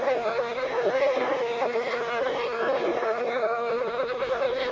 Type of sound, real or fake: fake